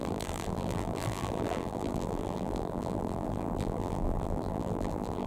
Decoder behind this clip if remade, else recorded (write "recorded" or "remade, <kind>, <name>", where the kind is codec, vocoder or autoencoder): remade, vocoder, BigVGAN v2